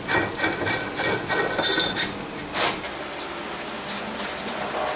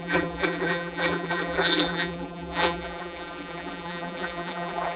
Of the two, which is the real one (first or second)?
first